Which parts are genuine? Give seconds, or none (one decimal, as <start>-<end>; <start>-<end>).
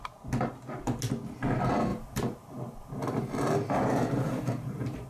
0.0-1.9